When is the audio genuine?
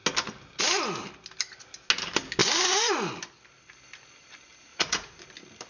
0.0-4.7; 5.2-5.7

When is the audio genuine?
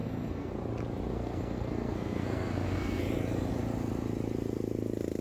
0.5-1.1; 3.0-5.2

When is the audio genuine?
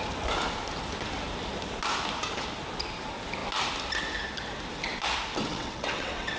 0.0-5.5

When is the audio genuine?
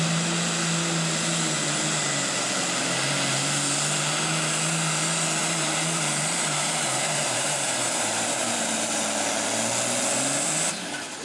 0.0-5.4; 9.0-11.2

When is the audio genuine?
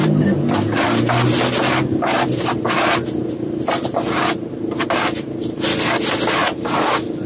0.0-7.3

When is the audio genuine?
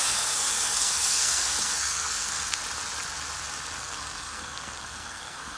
2.6-3.8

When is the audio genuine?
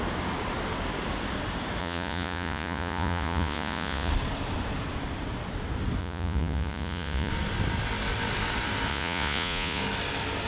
0.0-1.8; 4.1-6.0; 7.3-8.9; 9.8-10.5